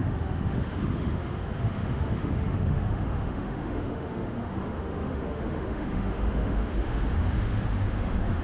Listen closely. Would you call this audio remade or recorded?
remade